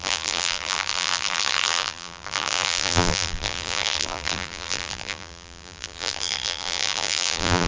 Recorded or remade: remade